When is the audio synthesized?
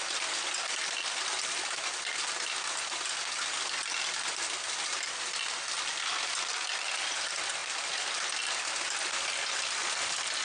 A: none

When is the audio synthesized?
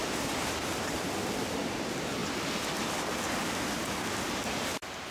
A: none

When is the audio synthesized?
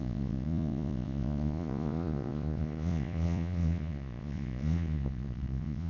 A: 0.0-5.9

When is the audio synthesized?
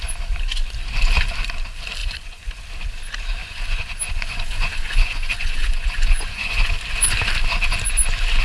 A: 2.0-2.6; 3.4-6.7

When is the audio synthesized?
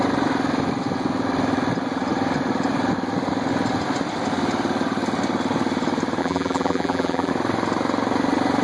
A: 6.2-7.3